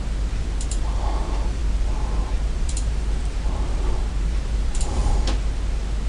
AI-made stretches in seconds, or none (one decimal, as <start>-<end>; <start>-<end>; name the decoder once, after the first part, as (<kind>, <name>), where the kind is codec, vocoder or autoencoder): 0.0-1.6 (vocoder, BigVGAN v2); 2.3-5.0